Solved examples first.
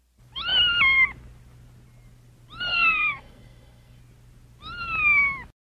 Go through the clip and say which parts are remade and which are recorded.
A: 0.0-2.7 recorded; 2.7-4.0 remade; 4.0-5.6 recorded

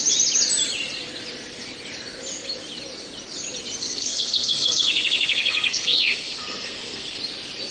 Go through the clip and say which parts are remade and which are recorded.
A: 0.0-3.8 recorded; 3.8-7.2 remade; 7.2-7.7 recorded

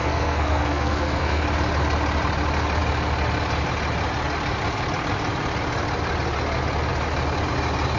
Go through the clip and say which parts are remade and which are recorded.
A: 0.0-1.4 remade; 1.4-8.0 recorded

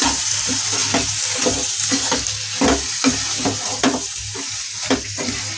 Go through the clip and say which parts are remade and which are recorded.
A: 0.0-5.6 recorded

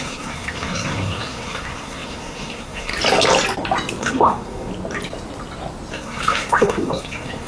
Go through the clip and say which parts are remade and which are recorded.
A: 0.0-2.9 remade; 2.9-4.0 recorded; 4.0-4.7 remade; 4.7-5.9 recorded; 5.9-7.5 remade

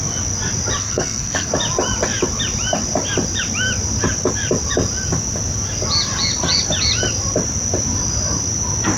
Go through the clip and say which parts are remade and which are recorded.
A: 0.0-0.8 recorded; 0.8-1.5 remade; 1.5-9.0 recorded

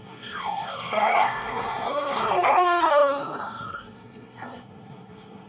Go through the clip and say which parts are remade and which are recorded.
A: 0.0-5.5 remade